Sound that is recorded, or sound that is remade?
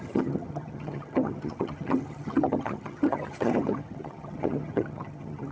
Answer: remade